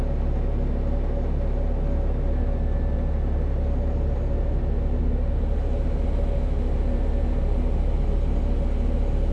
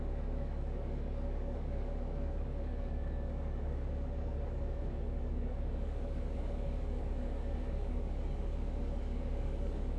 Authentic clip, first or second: first